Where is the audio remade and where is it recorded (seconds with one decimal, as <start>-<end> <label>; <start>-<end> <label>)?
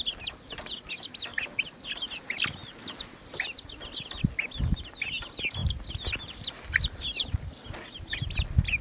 0.0-8.8 recorded